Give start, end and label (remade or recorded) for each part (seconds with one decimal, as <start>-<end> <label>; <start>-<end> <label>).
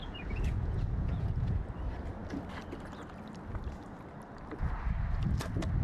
0.0-1.6 remade; 1.6-5.8 recorded